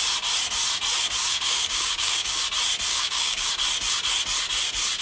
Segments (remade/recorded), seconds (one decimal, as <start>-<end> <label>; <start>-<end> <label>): 0.0-1.2 recorded; 1.2-2.4 remade; 2.4-2.9 recorded; 2.9-3.5 remade; 3.5-5.0 recorded